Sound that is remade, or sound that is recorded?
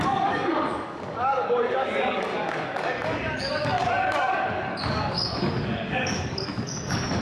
remade